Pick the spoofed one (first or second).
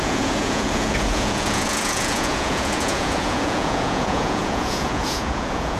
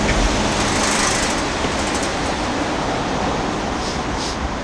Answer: first